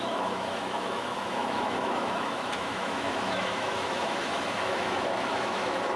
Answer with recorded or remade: remade